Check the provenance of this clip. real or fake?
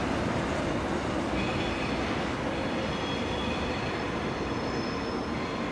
real